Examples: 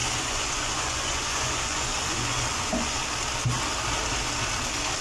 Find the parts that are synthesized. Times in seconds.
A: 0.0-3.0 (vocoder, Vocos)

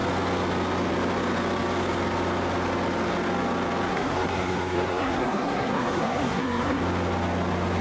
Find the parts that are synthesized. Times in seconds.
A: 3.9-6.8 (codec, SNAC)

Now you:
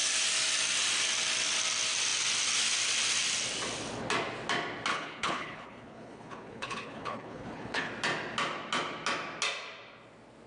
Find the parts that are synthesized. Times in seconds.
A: 4.9-7.9 (codec, HILCodec)

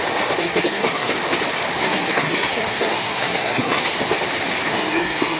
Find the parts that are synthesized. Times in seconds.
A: 0.4-1.1 (codec, SNAC); 1.8-3.8; 4.7-5.4

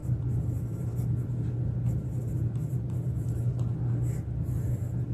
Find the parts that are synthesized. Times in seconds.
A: 0.0-0.9 (vocoder, BigVGAN v2); 2.2-3.4

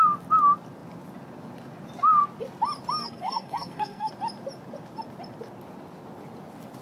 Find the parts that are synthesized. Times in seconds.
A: 3.0-4.1 (codec, SNAC)

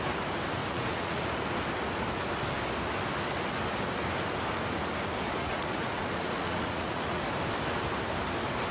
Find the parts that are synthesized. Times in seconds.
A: 0.6-1.2 (vocoder, Vocos); 5.4-7.2

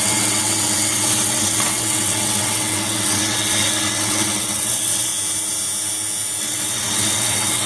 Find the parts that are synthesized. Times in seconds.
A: 0.0-5.1 (vocoder, WaveNeXt); 6.4-7.7